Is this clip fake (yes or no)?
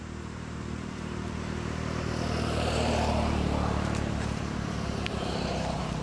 yes